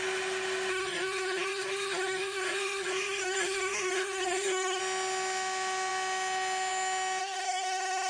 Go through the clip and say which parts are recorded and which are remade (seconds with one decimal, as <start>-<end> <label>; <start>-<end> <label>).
0.0-0.7 recorded; 0.7-4.8 remade; 4.8-7.2 recorded; 7.2-8.1 remade